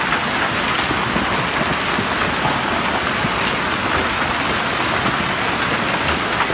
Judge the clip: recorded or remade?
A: recorded